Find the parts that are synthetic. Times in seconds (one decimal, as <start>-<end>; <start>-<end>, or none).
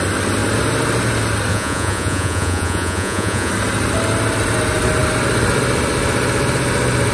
1.5-3.5